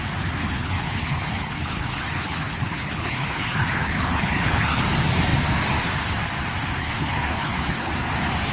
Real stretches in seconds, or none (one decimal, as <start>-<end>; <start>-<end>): 0.0-0.4; 4.8-6.8; 7.9-8.5